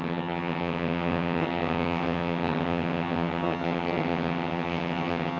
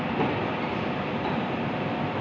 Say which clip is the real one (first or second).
second